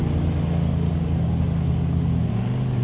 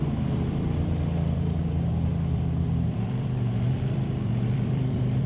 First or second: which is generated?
second